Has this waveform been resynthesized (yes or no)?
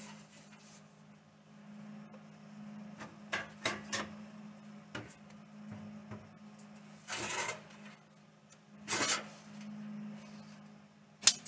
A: no